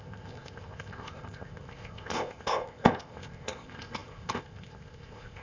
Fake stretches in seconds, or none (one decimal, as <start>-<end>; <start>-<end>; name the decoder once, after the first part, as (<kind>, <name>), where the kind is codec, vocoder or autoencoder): 0.0-5.4 (codec, ZipCodec)